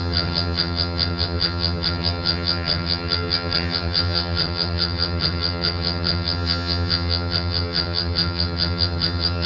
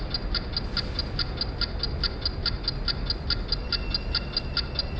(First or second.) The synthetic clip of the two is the first